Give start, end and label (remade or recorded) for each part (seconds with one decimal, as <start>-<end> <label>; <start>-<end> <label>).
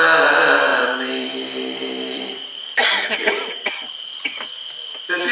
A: 0.0-0.7 recorded; 0.7-3.7 remade; 3.7-5.3 recorded